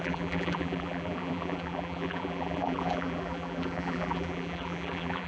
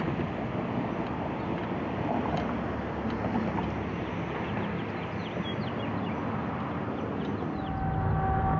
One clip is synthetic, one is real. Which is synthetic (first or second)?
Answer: first